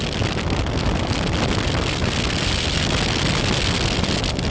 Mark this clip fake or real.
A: real